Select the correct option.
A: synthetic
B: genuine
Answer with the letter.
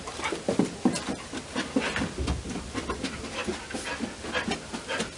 B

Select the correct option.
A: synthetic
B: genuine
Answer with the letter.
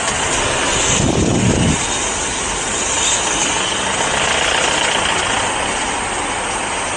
B